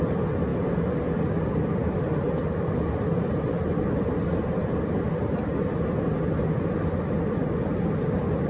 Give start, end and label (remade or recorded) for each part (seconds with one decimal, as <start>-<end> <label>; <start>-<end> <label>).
0.0-1.8 recorded; 1.8-3.8 remade; 3.8-8.5 recorded